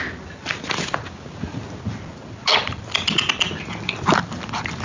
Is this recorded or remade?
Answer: recorded